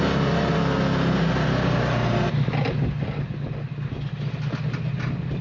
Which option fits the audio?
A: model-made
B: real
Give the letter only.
B